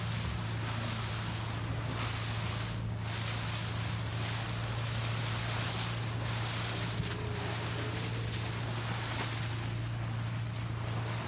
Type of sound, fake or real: real